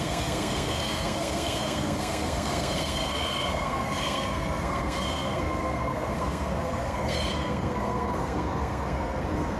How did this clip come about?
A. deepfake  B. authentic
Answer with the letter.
A